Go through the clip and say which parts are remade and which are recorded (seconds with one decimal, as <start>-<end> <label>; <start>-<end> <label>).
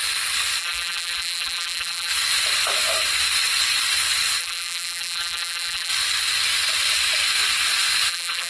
0.0-0.6 recorded; 0.6-2.1 remade; 2.1-4.4 recorded; 4.4-5.9 remade; 5.9-8.1 recorded; 8.1-8.5 remade